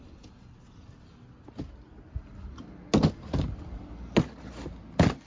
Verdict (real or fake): real